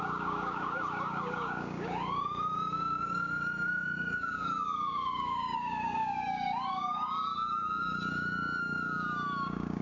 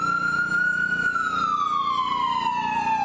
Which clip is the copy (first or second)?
first